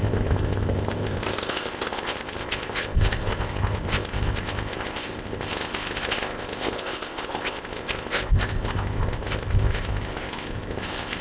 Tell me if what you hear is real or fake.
fake